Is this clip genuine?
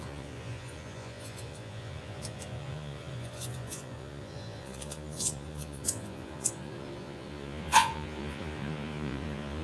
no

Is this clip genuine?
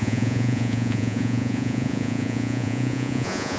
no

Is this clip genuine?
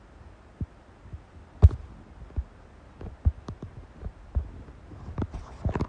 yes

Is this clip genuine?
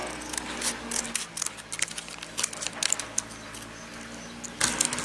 yes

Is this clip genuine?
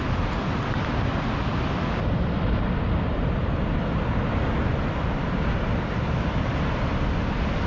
yes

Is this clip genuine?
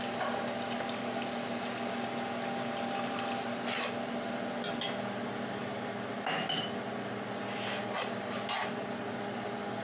yes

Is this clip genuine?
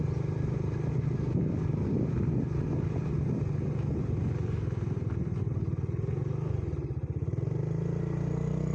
yes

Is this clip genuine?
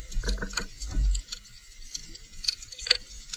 yes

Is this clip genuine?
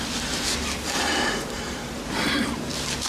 no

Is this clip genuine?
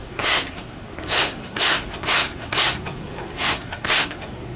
no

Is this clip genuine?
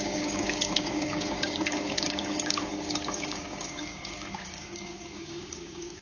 no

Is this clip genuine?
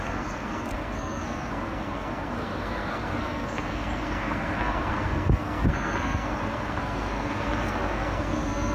no